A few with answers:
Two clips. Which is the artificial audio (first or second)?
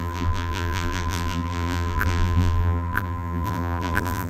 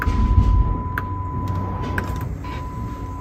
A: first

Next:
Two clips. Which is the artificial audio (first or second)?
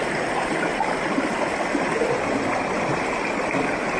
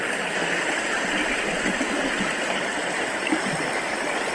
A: second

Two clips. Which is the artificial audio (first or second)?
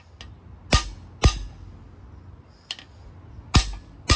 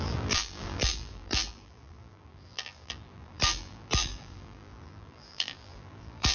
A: second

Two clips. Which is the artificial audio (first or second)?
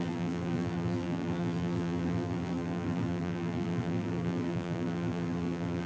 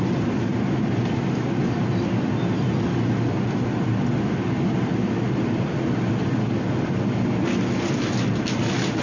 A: first